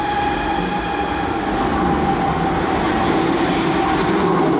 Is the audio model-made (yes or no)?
no